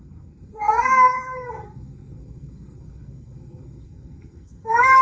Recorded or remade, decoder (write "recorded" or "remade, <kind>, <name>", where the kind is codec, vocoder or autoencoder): remade, codec, SNAC